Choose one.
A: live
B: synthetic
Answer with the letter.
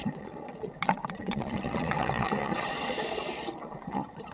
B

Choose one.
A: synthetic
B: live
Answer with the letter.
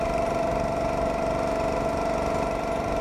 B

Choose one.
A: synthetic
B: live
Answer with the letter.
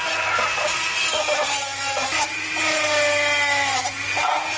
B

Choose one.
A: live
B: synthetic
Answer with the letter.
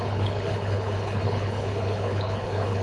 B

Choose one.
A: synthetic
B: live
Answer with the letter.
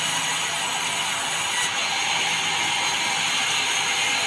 B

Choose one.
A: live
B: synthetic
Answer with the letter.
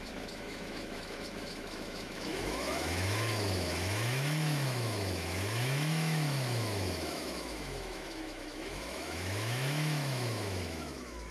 B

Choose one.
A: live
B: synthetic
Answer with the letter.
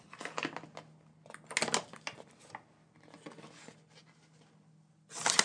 A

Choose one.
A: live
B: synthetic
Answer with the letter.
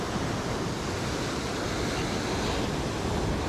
A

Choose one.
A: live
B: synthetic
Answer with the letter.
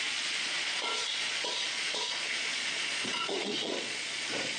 B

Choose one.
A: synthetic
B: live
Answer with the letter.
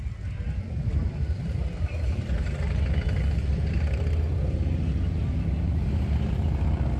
B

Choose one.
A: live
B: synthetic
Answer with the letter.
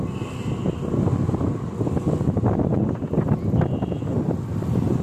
A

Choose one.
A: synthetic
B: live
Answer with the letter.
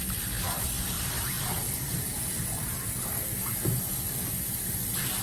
B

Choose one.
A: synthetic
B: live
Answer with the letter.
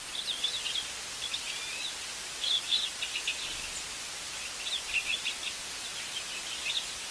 B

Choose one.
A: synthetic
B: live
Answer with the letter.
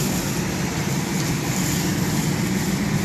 B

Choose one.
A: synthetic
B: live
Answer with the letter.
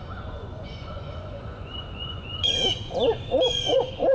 A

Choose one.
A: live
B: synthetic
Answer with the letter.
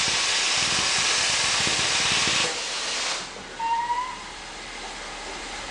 A